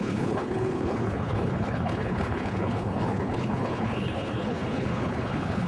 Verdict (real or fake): fake